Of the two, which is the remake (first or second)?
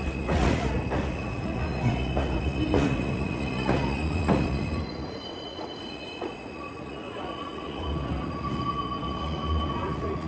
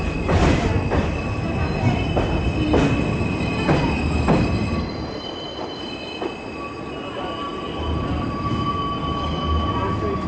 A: first